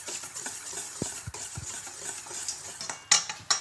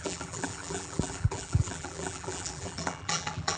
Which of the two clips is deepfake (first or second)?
second